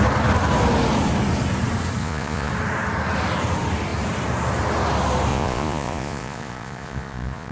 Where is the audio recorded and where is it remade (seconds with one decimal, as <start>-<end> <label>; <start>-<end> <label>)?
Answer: 0.0-2.0 recorded; 2.0-2.5 remade; 2.5-5.3 recorded; 5.3-7.5 remade